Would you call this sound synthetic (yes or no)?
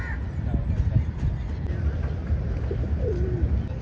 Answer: no